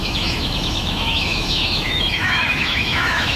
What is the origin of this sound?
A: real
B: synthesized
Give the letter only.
B